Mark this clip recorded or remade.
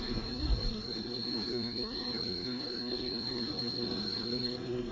remade